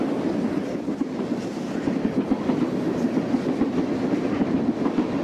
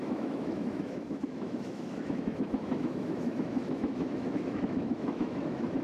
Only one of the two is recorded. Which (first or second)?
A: first